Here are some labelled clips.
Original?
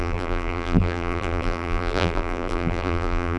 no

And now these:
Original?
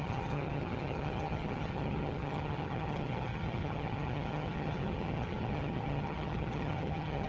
no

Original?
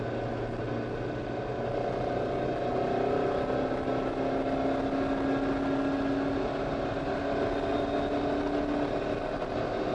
yes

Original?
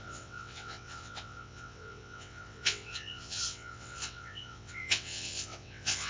no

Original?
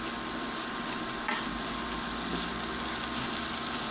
yes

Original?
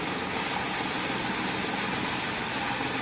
yes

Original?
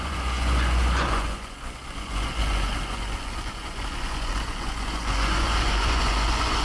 no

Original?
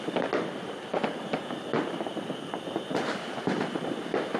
yes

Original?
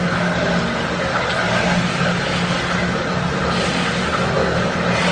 yes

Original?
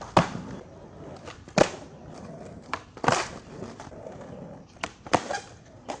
no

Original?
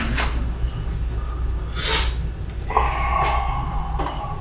yes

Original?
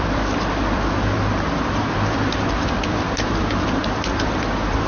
no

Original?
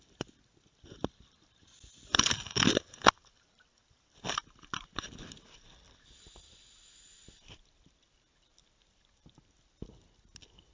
yes